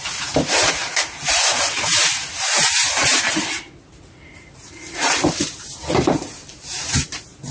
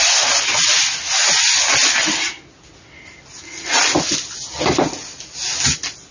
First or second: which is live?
second